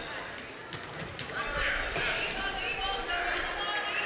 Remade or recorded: recorded